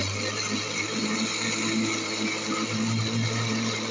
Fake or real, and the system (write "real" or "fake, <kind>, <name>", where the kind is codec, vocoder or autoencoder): real